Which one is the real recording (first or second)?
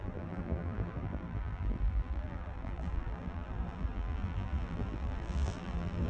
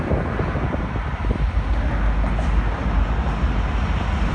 second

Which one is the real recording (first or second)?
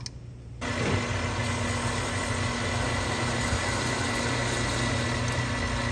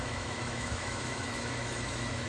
first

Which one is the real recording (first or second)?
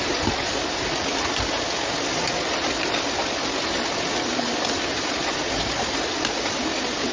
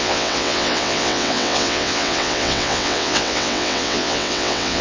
first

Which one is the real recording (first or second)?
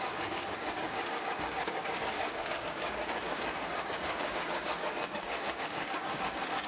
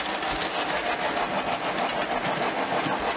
second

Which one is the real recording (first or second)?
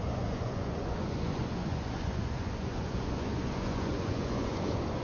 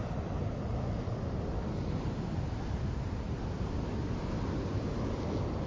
second